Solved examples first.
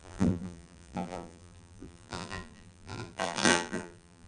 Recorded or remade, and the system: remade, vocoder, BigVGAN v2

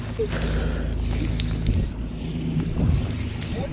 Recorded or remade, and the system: recorded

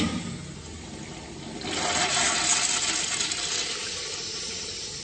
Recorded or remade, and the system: recorded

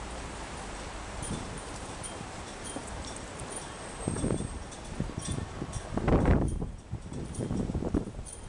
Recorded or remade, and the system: remade, vocoder, BigVGAN v2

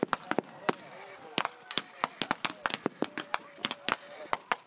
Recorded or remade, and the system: recorded